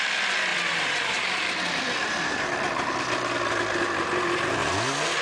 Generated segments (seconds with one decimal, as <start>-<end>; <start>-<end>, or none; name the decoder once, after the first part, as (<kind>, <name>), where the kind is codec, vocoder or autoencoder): 0.5-2.9 (vocoder, BigVGAN v2); 4.6-5.2